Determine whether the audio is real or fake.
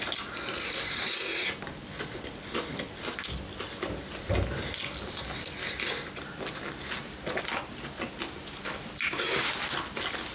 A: real